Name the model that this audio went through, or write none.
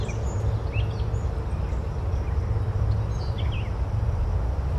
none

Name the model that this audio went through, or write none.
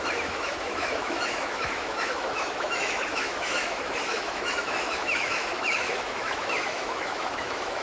autoencoder, DAC-VAE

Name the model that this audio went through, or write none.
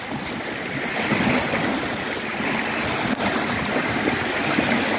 none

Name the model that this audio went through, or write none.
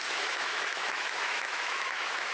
autoencoder, DAC-VAE